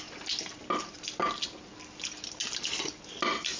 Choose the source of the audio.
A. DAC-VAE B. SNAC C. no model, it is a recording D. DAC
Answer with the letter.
C